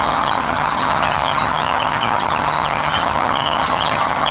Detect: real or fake fake